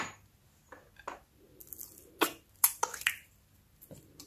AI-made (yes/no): no